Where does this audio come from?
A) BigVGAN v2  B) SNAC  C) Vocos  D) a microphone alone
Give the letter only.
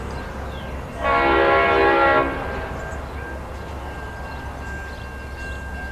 D